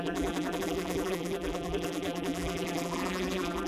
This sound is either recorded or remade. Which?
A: remade